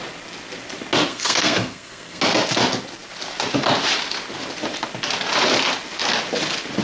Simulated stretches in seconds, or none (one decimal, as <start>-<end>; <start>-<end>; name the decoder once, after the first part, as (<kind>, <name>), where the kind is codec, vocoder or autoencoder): 1.1-2.2 (codec, SNAC)